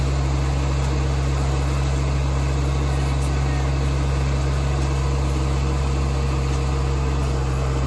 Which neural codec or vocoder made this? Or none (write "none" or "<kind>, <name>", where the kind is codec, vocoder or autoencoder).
none